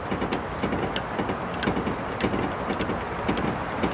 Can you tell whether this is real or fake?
real